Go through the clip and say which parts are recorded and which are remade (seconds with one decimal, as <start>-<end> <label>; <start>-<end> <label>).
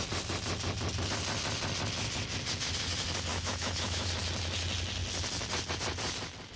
0.0-3.3 recorded; 3.3-4.1 remade; 4.1-6.6 recorded